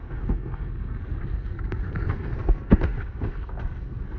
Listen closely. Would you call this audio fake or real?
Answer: fake